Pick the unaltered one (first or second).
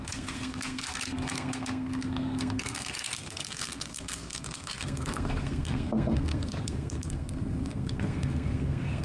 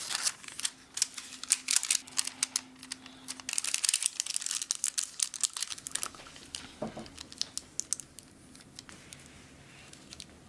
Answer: second